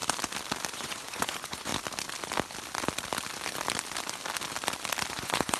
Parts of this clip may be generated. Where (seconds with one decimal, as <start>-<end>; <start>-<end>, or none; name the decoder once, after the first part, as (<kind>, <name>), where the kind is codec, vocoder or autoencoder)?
0.7-1.7 (vocoder, Vocos); 5.1-5.6